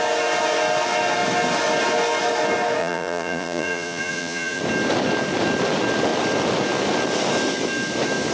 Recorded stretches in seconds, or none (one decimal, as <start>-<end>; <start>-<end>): 0.0-2.8; 4.6-8.3